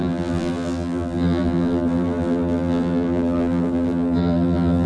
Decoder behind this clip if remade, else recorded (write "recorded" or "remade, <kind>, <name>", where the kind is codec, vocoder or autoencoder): remade, vocoder, BigVGAN v2